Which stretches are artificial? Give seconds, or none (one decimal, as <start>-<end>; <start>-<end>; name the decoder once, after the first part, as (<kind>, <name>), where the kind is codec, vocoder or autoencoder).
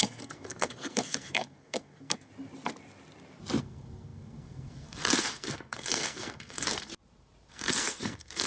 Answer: 0.0-2.3 (codec, SNAC); 3.6-6.9; 7.5-8.5